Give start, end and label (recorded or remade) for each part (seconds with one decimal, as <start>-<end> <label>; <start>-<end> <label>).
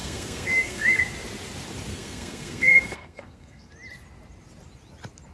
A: 0.0-1.0 remade; 1.0-1.9 recorded; 1.9-3.7 remade; 3.7-5.3 recorded